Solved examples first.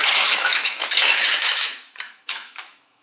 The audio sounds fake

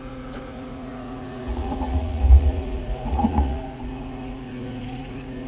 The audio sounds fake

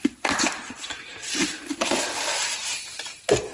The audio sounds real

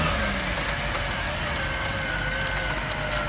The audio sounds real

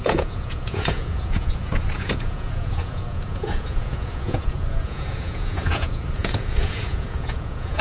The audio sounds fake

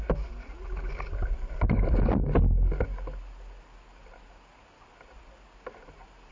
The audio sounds real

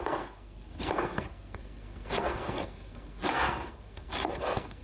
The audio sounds fake